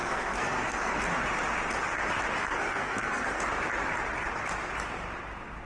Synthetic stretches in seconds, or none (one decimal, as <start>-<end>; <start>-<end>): 0.0-1.0; 2.5-3.4